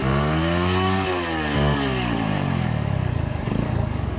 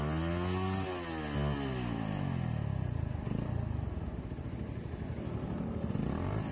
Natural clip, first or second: second